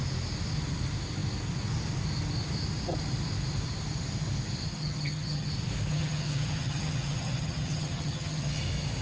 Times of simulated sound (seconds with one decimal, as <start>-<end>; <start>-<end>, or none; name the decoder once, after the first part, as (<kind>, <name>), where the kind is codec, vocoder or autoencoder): 4.7-5.5 (vocoder, HiFi-GAN); 5.9-8.6